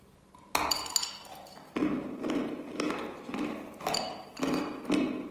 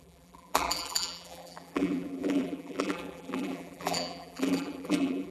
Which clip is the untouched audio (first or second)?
first